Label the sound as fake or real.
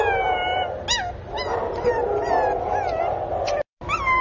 real